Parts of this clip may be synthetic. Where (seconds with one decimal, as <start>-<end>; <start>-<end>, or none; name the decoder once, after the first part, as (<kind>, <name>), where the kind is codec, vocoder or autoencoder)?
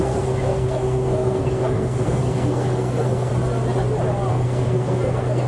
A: 0.0-3.3 (codec, SNAC); 4.3-5.5